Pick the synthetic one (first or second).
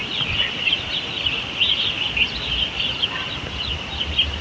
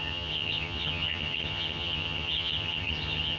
second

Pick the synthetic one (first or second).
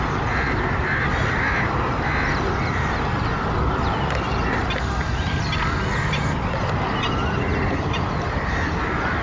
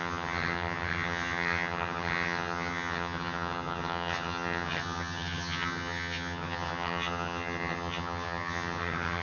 second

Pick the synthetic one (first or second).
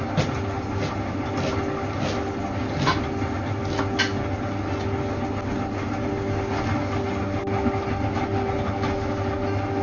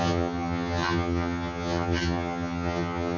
second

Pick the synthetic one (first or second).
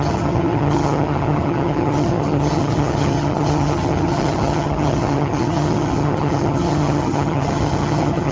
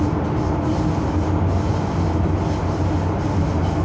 first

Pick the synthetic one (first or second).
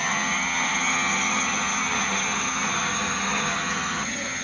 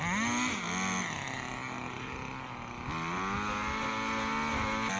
first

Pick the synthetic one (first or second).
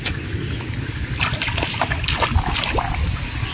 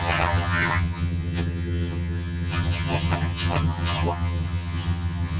second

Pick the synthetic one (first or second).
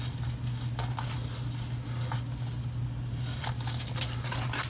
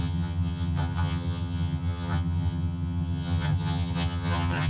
second